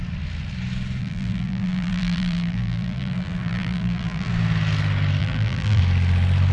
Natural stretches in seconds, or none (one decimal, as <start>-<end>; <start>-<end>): 0.0-1.0; 4.3-5.2; 5.8-6.5